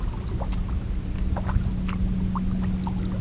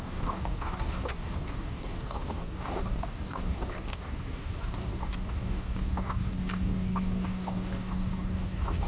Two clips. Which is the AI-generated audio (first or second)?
second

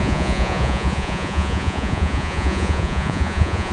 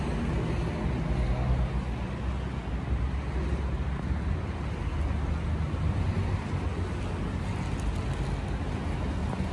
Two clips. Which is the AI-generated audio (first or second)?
first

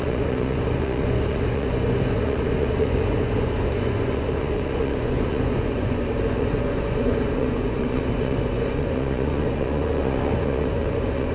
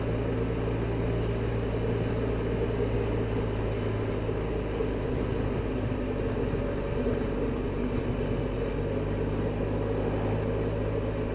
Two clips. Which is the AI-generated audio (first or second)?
first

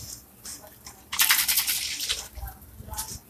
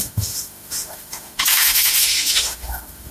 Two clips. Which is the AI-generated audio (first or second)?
second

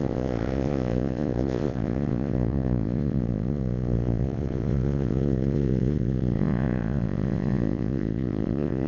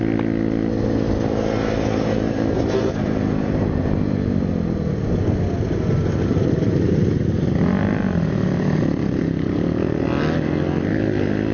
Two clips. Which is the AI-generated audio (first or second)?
first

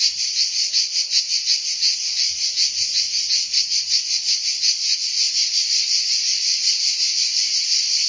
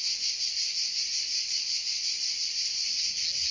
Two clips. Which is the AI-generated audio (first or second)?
first